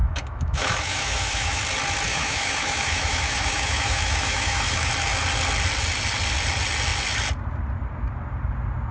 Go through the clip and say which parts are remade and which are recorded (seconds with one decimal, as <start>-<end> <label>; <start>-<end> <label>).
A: 0.0-1.6 remade; 1.6-2.1 recorded; 2.1-4.9 remade; 4.9-8.9 recorded